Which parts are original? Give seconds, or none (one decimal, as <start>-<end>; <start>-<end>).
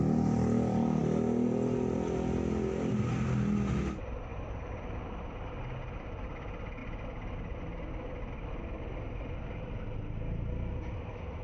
0.0-4.3; 5.4-11.4